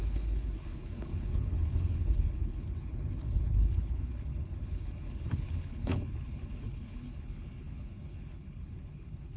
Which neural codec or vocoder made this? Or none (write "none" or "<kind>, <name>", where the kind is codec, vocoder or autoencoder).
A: codec, HILCodec